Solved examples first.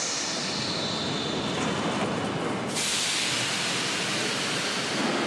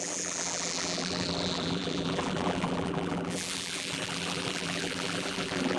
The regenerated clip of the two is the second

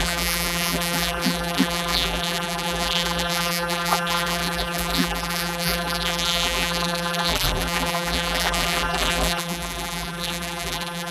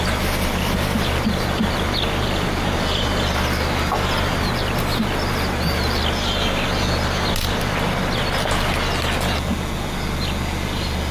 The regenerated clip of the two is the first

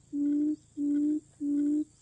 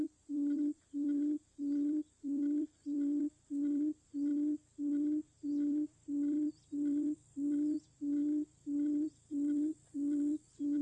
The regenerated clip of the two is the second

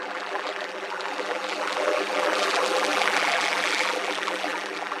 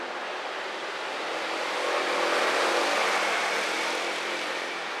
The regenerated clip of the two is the first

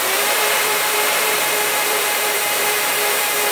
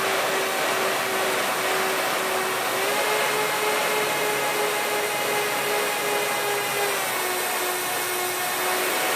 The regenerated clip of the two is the first